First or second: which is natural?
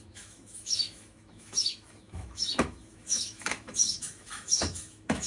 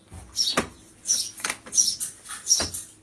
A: second